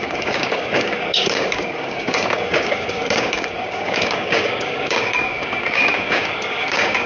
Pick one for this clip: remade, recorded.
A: remade